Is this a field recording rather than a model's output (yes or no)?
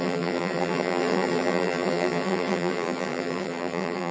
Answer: no